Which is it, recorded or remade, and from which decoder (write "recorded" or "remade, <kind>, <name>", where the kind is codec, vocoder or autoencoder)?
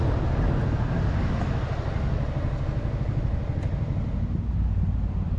recorded